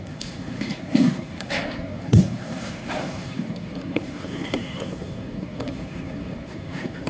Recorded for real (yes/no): no